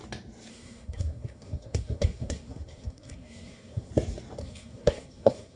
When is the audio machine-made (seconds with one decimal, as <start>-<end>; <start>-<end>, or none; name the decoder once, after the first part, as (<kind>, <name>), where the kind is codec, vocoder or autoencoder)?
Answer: 0.5-3.9 (codec, SNAC); 4.4-5.6